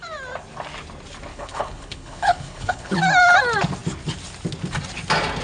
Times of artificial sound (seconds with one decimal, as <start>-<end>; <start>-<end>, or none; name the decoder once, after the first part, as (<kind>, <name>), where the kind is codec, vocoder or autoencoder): 1.3-3.0 (codec, HILCodec)